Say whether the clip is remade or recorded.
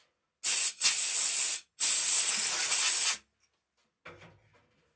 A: recorded